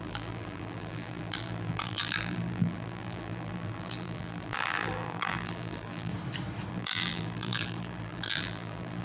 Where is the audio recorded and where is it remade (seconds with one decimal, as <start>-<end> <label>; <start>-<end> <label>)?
0.0-6.1 remade; 6.1-6.7 recorded; 6.7-9.0 remade